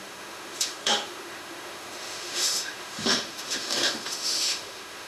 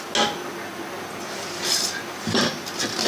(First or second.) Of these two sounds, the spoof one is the first